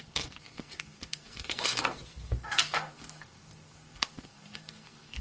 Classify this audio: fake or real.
fake